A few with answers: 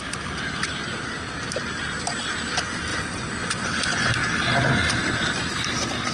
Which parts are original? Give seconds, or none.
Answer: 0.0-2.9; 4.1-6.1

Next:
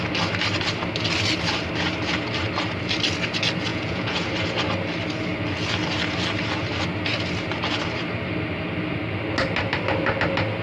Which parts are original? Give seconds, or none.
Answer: 0.0-3.7; 4.3-10.6

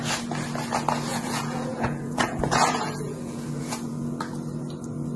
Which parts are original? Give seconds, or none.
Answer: 0.0-1.1; 4.2-5.2